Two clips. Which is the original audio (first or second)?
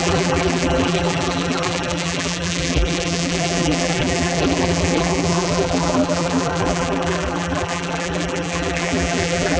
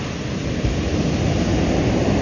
second